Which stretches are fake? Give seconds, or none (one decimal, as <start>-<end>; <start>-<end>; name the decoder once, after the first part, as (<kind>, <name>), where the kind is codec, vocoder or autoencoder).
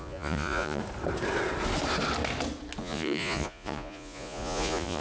0.0-0.8 (vocoder, Vocos); 2.8-5.0